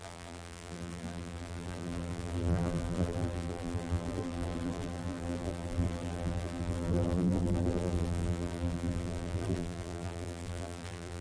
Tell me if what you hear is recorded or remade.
remade